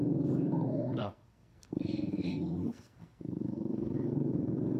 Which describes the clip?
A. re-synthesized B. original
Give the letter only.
A